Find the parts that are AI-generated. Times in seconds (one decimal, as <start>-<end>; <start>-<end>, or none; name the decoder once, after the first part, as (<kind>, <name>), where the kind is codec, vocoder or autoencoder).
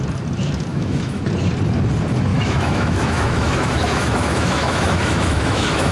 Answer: 0.7-1.2 (autoencoder, DAC-VAE); 2.3-5.9